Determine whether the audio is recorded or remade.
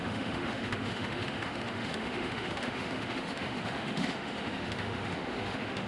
remade